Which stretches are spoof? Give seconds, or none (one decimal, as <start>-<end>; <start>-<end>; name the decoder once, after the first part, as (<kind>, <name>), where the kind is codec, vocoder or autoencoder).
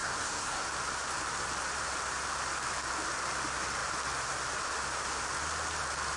0.0-0.7 (codec, SNAC)